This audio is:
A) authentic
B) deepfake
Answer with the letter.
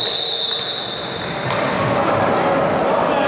A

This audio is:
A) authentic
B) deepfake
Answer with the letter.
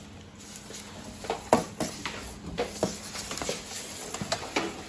A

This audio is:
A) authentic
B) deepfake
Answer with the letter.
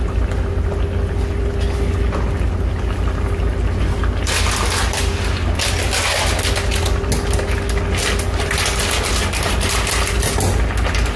A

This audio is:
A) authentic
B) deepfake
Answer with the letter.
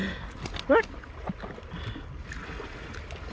A